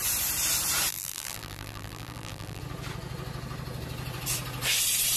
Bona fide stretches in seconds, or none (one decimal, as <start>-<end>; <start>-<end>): 0.0-0.9; 2.6-5.2